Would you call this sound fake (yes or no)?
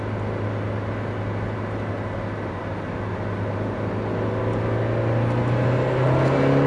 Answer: no